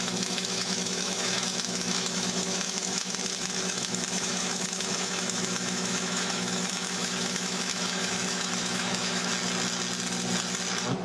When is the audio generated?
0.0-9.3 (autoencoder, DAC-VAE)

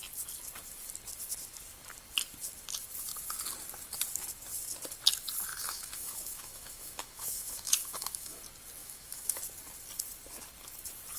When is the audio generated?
5.5-8.4 (autoencoder, DAC-VAE); 8.8-9.4

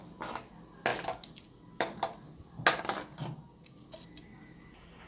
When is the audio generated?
none

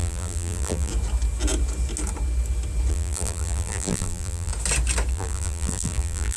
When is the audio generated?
0.0-0.9 (vocoder, BigVGAN v2); 2.9-4.5; 5.1-6.4

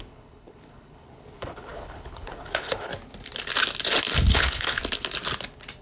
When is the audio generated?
0.0-2.9 (codec, HILCodec); 4.3-4.8

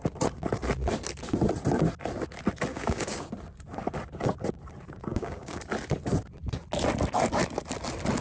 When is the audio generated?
2.7-3.3 (codec, DAC); 5.1-5.6